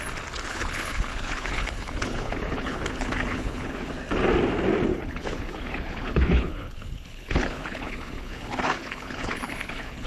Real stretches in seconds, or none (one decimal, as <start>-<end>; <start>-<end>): 0.0-0.5; 3.9-4.9